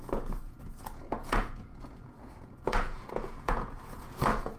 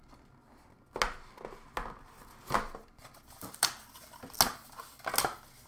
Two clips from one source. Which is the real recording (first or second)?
second